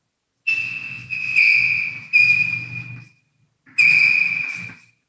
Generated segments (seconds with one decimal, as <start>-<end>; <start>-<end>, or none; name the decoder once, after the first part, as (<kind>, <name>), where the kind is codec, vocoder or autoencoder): 0.6-1.9 (vocoder, WaveNeXt)